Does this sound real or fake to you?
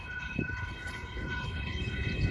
fake